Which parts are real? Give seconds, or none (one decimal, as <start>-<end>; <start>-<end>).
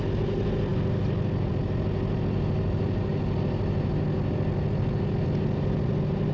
0.0-6.3